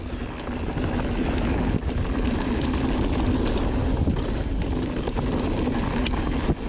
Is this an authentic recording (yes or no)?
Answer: yes